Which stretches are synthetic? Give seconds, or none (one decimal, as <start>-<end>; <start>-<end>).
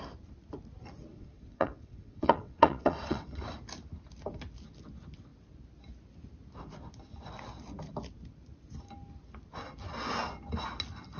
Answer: 1.1-3.4